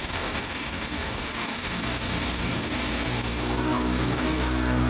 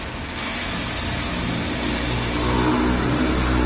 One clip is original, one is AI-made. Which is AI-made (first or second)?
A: first